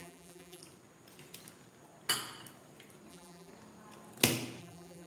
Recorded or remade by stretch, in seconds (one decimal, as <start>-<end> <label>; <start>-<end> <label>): 0.0-0.6 remade; 0.6-3.1 recorded; 3.1-3.5 remade; 3.5-4.6 recorded; 4.6-5.1 remade